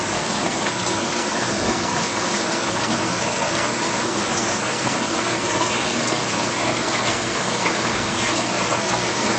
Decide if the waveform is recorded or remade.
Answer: remade